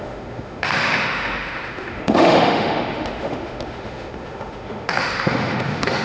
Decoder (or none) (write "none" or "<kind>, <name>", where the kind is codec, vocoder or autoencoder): autoencoder, DAC-VAE